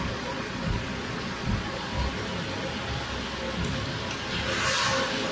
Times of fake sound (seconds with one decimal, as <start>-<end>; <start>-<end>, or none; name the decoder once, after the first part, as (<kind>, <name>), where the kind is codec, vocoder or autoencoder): 0.0-1.9 (vocoder, Vocos)